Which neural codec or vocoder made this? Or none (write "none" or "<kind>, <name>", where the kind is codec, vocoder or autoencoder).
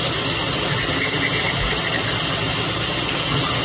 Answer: none